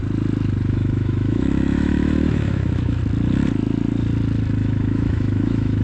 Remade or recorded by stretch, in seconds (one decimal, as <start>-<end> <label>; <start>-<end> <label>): 0.0-0.7 recorded; 0.7-3.0 remade; 3.0-4.6 recorded; 4.6-5.8 remade